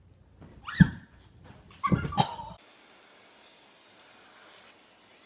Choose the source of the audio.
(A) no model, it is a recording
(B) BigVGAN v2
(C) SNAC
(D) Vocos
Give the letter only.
A